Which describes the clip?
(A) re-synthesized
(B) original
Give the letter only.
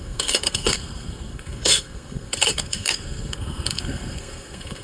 A